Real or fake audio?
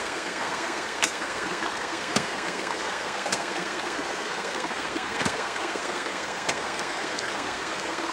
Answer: fake